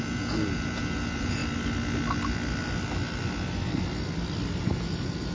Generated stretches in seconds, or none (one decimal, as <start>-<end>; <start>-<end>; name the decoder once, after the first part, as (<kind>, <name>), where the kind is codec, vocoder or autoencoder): 0.0-1.4 (vocoder, Vocos); 4.6-5.3

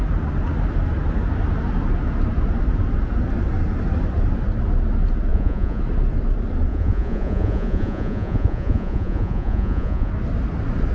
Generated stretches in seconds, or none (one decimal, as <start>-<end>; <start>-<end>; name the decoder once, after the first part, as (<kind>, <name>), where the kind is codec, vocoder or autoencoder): 5.3-5.8 (vocoder, Vocos); 6.7-10.1

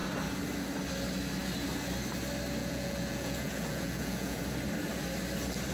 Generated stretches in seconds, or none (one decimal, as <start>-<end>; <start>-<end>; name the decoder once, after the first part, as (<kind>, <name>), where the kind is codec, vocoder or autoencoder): 2.6-4.4 (vocoder, Vocos)

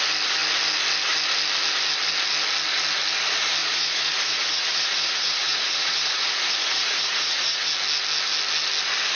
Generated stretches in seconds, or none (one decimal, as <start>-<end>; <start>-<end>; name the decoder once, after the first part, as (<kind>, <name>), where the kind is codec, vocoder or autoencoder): 3.6-7.7 (vocoder, Vocos)